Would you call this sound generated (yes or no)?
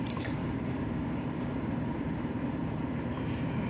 yes